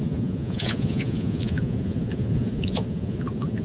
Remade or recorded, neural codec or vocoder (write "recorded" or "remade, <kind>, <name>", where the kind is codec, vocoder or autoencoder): remade, vocoder, Vocos